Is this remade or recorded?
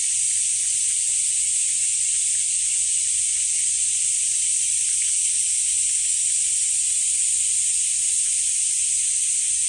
recorded